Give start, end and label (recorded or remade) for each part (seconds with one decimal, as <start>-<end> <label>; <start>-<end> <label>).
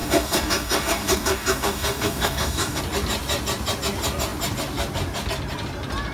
0.0-2.8 remade; 2.8-6.1 recorded